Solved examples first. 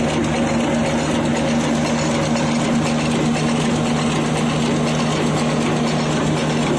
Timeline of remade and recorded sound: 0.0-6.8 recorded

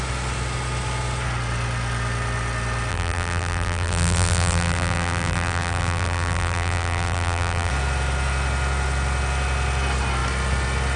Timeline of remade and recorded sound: 0.0-2.9 recorded; 2.9-7.7 remade; 7.7-11.0 recorded

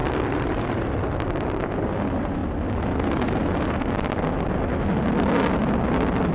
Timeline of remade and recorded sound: 0.0-1.6 remade; 1.6-5.6 recorded; 5.6-6.3 remade

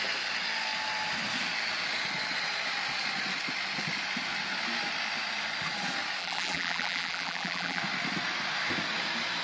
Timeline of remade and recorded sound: 0.0-6.2 recorded; 6.2-7.8 remade; 7.8-9.4 recorded

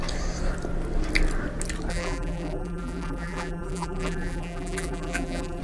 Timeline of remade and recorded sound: 0.0-1.9 recorded; 1.9-5.6 remade

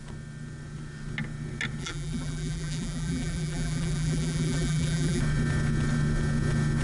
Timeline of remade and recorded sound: 0.0-1.8 recorded; 1.8-5.2 remade; 5.2-6.8 recorded

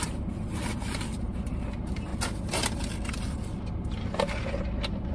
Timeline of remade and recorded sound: 0.0-2.1 remade; 2.1-3.1 recorded; 3.1-5.1 remade